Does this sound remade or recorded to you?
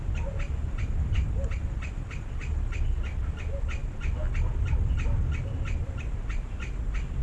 recorded